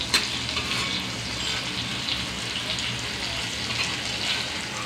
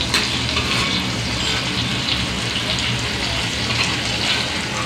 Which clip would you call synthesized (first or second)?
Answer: second